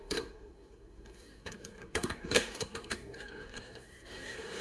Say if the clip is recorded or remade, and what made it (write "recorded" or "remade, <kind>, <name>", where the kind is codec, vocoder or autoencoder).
remade, codec, SNAC